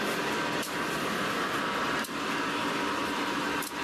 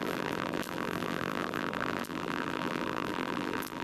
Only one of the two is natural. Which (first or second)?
first